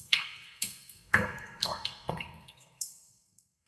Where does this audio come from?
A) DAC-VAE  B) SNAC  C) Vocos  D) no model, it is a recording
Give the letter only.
B